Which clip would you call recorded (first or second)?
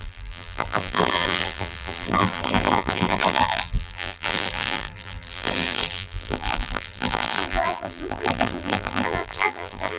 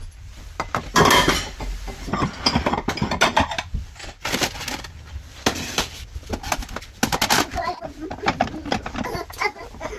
second